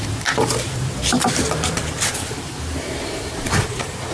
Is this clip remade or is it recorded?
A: remade